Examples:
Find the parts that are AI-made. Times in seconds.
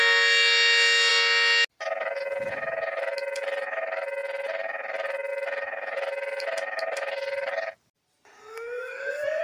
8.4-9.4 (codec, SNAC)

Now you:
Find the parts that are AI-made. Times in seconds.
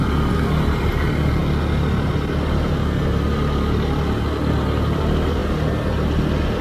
none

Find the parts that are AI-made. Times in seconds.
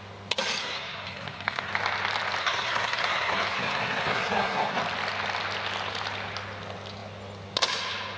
0.6-1.7 (codec, SNAC); 2.4-4.8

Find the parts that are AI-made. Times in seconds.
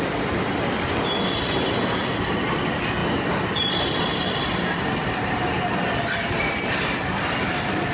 none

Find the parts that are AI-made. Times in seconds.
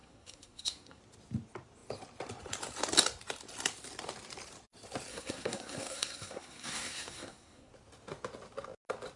0.0-1.0 (codec, SNAC); 5.1-7.7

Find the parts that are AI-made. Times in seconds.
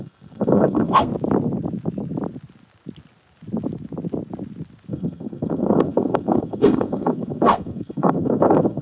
0.0-1.1 (codec, SNAC); 4.9-8.8